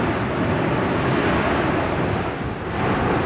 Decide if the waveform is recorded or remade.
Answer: recorded